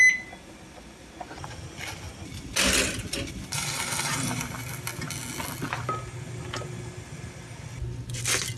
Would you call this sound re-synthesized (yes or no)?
no